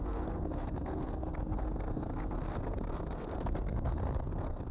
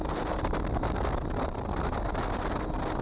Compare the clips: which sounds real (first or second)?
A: second